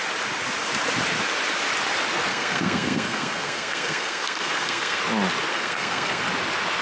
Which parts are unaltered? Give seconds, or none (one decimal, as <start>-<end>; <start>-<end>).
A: 0.0-2.3; 5.0-5.5; 6.2-6.8